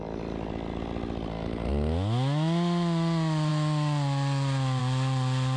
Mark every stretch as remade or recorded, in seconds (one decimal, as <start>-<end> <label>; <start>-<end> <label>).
0.0-5.6 recorded